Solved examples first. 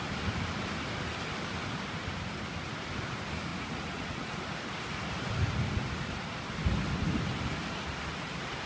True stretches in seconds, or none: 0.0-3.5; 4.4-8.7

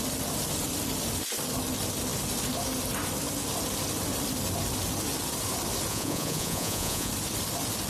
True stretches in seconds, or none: 0.0-5.9; 7.1-7.9